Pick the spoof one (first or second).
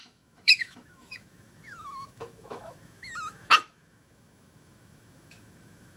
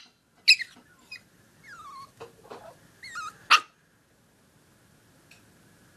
first